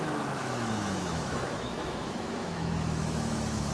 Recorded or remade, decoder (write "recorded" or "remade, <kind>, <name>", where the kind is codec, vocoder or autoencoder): remade, autoencoder, DAC-VAE